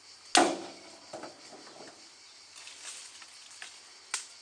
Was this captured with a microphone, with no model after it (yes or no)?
yes